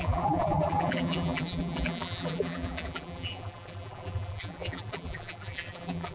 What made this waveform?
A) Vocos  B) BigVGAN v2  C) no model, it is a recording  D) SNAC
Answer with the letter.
B